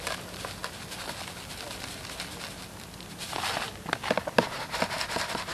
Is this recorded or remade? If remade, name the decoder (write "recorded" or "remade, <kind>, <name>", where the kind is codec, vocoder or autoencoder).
recorded